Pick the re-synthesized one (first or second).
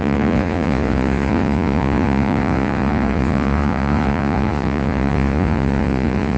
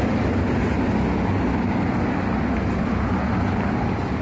first